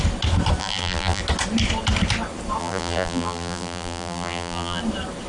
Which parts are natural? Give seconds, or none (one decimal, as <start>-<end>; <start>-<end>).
0.0-0.6; 1.2-2.6; 4.8-5.3